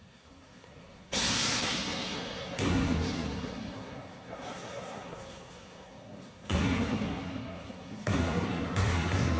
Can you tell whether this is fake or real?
fake